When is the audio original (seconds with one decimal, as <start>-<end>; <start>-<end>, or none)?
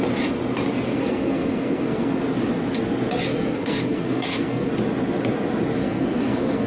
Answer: 0.0-0.9; 2.2-3.3; 4.7-5.8